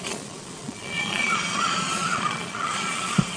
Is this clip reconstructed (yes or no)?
yes